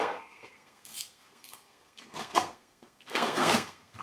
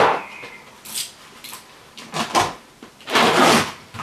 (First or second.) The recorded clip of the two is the second